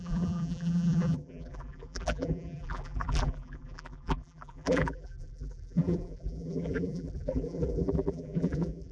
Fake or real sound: fake